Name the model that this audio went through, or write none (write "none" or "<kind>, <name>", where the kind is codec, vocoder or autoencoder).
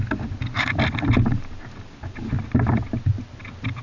none